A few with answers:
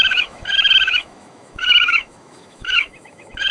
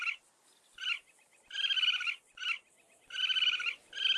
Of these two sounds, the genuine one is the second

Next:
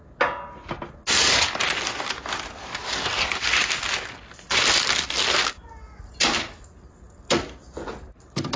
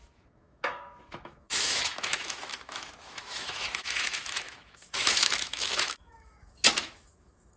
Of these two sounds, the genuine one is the first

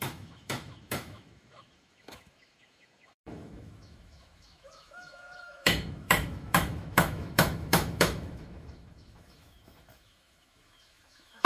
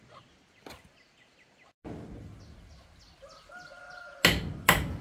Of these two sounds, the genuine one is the second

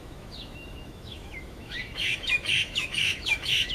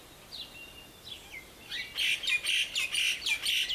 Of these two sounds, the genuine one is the second